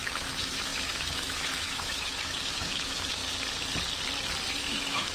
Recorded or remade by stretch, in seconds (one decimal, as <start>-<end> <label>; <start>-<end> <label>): 0.0-3.2 remade; 3.2-4.5 recorded; 4.5-5.1 remade